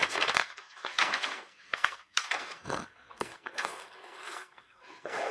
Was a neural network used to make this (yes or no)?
yes